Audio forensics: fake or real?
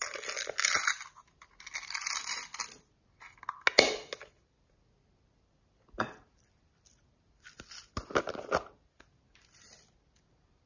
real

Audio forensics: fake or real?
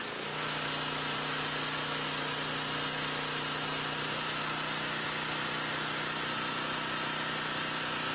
real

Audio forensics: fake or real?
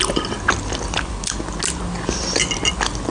real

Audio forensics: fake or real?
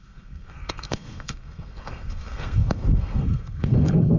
fake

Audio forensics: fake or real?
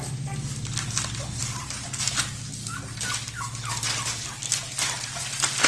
real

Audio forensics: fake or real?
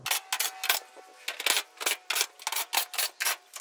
real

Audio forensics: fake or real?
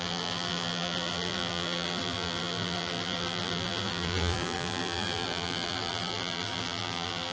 fake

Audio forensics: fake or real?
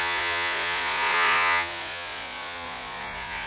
fake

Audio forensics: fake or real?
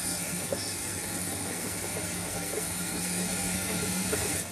fake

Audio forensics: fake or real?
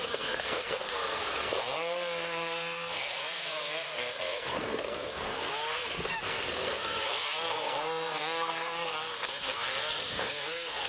fake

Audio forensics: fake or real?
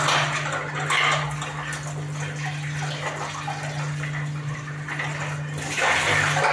real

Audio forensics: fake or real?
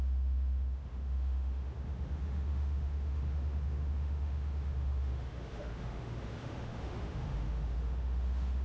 fake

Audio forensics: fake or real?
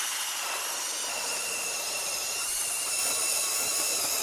real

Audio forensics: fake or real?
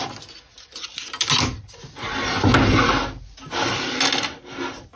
real